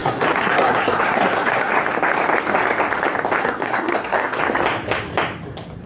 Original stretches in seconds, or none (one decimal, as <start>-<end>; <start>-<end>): 1.7-3.4; 4.4-5.9